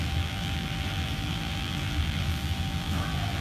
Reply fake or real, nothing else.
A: fake